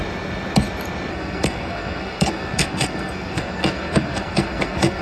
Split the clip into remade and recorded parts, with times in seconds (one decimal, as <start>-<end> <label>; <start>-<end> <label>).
0.0-1.1 recorded; 1.1-5.0 remade